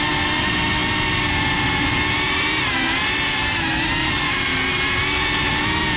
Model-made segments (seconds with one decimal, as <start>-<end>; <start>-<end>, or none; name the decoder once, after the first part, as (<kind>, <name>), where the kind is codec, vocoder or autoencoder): none